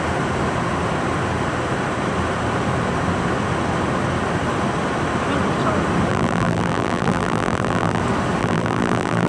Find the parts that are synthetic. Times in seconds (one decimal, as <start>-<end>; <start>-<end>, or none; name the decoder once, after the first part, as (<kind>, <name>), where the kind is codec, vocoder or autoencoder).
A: 6.1-8.0 (vocoder, BigVGAN v2); 8.4-9.3